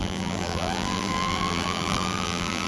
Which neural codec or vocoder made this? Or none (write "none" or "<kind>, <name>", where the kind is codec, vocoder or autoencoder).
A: vocoder, BigVGAN v2